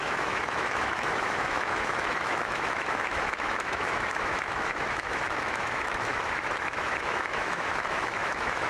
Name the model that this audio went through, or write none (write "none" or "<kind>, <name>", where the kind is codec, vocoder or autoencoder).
autoencoder, DAC-VAE